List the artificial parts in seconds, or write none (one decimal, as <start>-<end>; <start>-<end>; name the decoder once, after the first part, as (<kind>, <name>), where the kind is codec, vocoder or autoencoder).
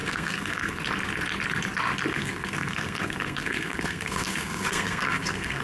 0.0-0.8 (codec, SNAC); 2.1-5.6